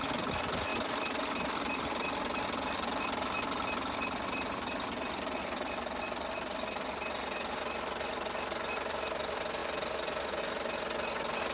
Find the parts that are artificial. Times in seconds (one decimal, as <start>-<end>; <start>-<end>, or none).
none